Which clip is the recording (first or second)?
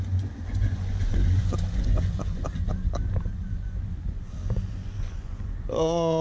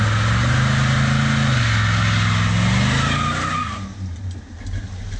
second